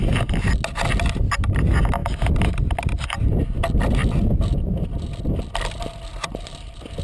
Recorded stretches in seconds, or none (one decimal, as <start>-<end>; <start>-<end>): 0.0-6.1